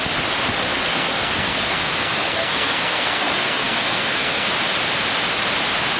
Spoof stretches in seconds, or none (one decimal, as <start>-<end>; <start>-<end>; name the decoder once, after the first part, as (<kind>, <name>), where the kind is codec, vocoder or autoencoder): 0.9-4.5 (codec, SNAC)